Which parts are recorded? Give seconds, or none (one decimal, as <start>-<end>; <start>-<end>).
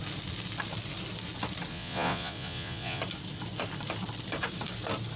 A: 0.0-1.7; 3.0-5.2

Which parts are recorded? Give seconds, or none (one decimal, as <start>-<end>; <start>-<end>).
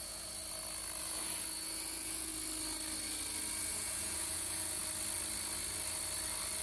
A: 0.4-1.0; 2.3-3.6; 4.8-6.6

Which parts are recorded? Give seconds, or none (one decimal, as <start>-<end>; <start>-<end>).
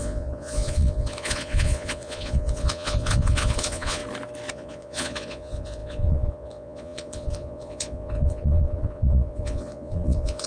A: 4.0-4.5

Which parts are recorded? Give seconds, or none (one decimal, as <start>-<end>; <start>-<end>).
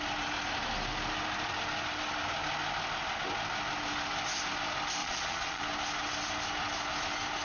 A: 0.0-5.0; 5.6-7.4